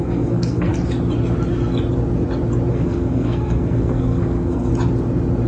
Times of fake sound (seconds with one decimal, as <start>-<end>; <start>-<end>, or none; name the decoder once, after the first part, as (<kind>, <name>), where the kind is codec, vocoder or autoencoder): 0.0-0.7 (codec, SNAC); 2.7-4.7